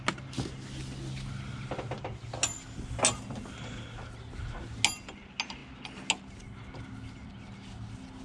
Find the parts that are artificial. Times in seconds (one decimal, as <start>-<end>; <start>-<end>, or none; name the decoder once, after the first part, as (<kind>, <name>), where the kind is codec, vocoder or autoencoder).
none

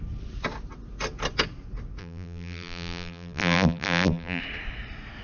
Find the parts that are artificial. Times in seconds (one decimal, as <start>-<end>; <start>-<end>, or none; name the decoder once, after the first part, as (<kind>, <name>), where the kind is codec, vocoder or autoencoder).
2.0-4.4 (vocoder, BigVGAN v2)